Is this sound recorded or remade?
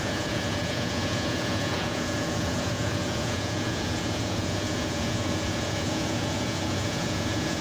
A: remade